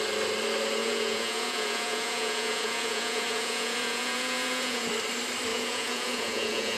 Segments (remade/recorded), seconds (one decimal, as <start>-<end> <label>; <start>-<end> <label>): 0.0-0.8 recorded; 0.8-4.9 remade; 4.9-5.5 recorded; 5.5-6.8 remade